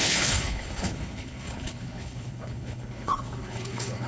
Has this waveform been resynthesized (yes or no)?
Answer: yes